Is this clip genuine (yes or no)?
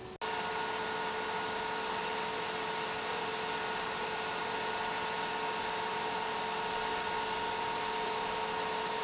yes